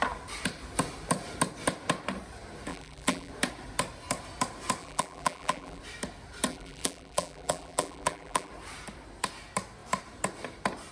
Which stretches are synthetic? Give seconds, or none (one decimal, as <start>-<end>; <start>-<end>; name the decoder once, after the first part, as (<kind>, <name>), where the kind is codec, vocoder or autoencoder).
2.7-3.3 (vocoder, BigVGAN v2); 4.8-5.8; 6.5-8.5